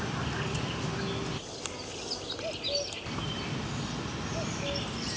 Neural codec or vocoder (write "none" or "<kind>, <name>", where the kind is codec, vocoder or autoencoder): none